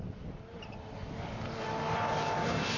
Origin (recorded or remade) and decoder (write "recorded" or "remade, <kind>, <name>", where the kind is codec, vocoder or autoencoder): recorded